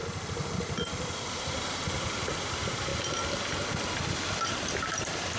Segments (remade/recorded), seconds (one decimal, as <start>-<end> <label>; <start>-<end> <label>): 0.0-2.9 remade; 2.9-4.4 recorded; 4.4-5.4 remade